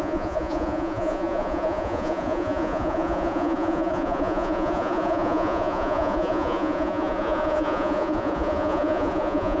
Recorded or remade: remade